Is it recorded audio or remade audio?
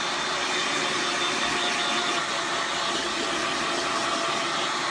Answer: recorded